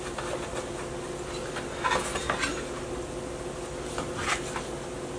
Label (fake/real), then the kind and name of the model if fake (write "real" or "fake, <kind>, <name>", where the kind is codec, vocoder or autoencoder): real